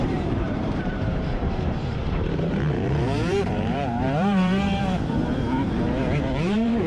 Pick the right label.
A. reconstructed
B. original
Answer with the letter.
A